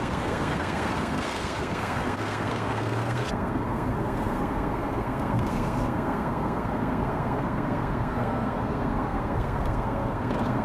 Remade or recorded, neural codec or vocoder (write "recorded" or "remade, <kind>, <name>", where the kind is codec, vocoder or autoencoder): remade, codec, SNAC